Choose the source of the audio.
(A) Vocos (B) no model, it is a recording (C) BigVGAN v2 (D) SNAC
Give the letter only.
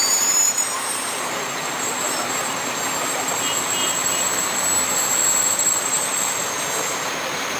C